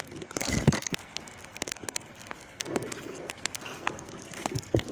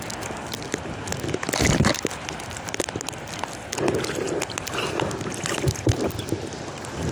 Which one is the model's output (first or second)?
first